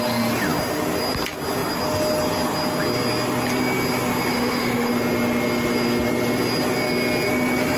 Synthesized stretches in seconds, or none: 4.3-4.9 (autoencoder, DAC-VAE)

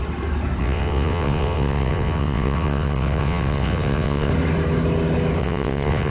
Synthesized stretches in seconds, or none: 0.6-4.3 (vocoder, WaveNeXt); 5.4-6.1